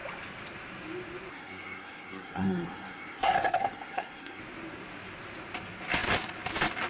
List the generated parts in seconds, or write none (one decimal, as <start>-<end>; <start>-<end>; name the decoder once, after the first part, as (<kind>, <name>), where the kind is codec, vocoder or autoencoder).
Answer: 1.3-4.4 (codec, SNAC)